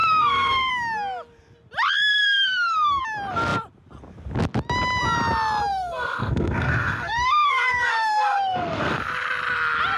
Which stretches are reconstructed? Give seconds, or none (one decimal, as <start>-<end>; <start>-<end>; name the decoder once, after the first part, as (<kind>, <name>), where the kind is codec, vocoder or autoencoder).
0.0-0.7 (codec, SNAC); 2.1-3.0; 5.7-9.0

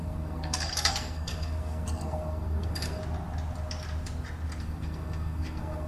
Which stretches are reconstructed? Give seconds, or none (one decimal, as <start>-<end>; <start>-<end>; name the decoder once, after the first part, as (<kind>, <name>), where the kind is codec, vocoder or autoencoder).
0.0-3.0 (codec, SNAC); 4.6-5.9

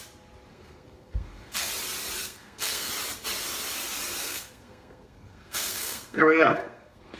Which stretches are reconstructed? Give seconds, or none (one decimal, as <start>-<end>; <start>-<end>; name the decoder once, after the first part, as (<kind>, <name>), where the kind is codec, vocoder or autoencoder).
0.5-1.7 (codec, SNAC); 2.2-2.9; 4.2-7.2